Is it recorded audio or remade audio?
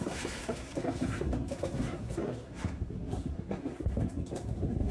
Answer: remade